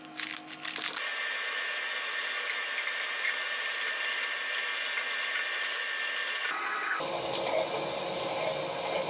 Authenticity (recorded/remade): recorded